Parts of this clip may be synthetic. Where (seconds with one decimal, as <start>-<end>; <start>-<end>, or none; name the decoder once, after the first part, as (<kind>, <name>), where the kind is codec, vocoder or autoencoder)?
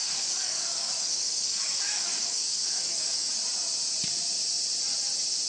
0.0-3.3 (codec, DAC)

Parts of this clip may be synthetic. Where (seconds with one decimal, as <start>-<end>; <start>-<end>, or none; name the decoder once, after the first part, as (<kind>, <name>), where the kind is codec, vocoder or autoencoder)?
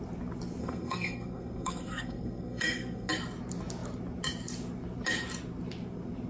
0.6-3.1 (codec, SNAC)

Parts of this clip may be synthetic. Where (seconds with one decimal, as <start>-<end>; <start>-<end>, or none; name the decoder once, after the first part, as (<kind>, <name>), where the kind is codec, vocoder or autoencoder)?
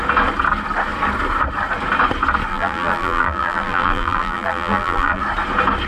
2.5-5.2 (vocoder, BigVGAN v2)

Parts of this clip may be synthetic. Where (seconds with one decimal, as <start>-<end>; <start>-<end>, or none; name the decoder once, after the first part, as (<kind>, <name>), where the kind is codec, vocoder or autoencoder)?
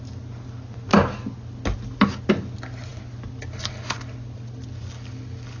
none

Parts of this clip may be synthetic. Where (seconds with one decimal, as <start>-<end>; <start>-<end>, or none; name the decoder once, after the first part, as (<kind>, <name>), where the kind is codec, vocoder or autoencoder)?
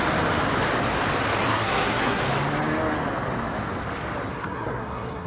1.5-2.2 (codec, SNAC); 4.3-5.3